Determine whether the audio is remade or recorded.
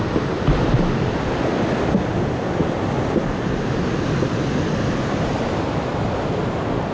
recorded